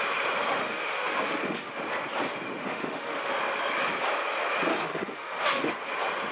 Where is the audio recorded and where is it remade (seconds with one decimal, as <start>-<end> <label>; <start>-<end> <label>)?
0.0-0.6 recorded; 0.6-1.7 remade; 1.7-2.6 recorded; 2.6-3.3 remade; 3.3-4.7 recorded; 4.7-5.7 remade; 5.7-6.3 recorded